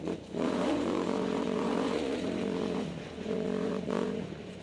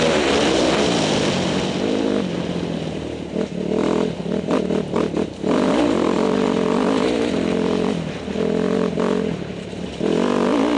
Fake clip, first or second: first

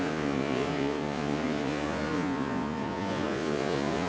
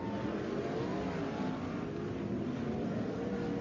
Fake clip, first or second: first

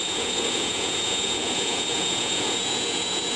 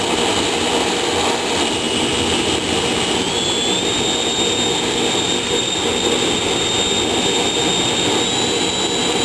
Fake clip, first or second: first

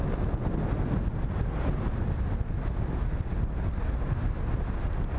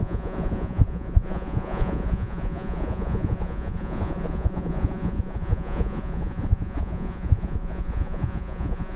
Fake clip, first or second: second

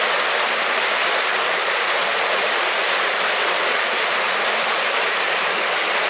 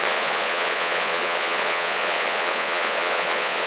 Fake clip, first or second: second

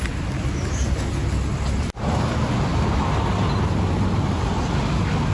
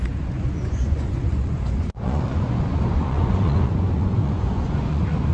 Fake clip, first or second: second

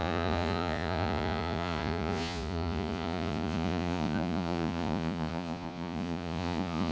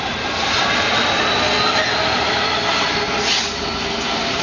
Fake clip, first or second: first